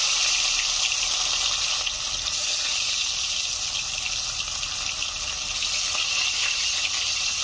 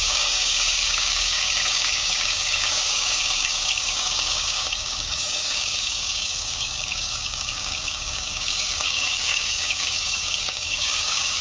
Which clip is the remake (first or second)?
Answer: second